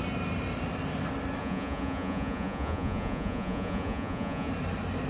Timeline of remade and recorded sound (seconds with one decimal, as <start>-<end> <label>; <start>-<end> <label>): 0.0-1.4 recorded; 1.4-4.5 remade; 4.5-5.1 recorded